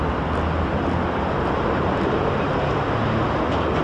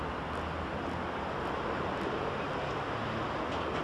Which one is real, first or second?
second